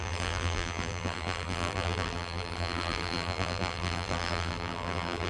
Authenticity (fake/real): fake